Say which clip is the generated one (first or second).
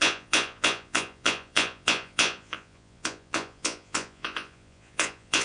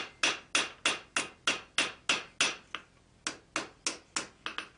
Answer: first